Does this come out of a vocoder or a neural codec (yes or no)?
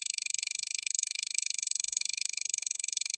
yes